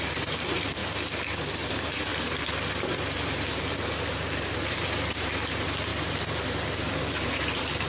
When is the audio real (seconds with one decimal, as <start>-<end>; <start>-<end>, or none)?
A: 0.8-1.7; 2.1-2.7